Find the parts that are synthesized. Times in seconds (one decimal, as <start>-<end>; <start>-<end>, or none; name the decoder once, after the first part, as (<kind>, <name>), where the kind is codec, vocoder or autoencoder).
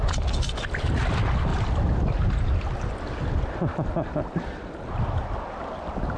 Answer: 1.5-2.5 (vocoder, BigVGAN v2)